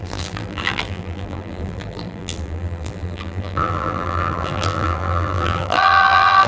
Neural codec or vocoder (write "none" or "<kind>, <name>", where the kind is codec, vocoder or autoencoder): vocoder, BigVGAN v2